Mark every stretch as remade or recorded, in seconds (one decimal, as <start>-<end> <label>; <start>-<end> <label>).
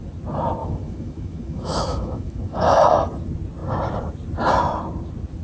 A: 0.0-0.6 recorded; 0.6-2.9 remade; 2.9-5.4 recorded